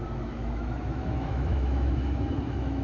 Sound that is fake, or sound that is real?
fake